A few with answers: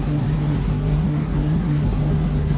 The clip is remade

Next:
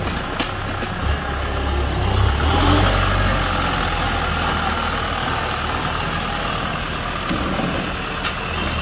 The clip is recorded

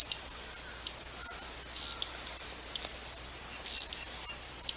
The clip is recorded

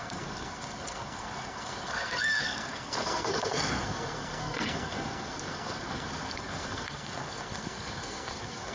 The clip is remade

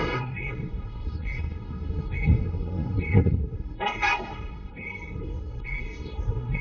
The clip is remade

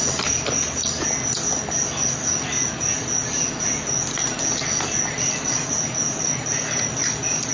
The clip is recorded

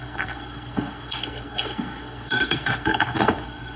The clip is remade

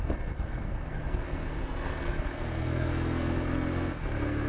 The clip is remade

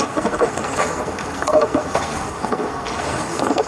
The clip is remade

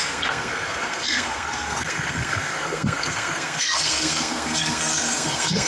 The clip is remade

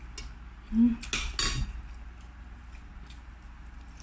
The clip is recorded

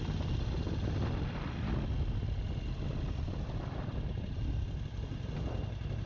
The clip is recorded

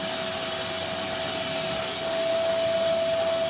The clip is recorded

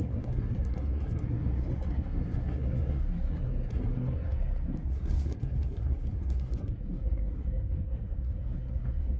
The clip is remade